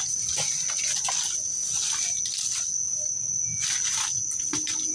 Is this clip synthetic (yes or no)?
no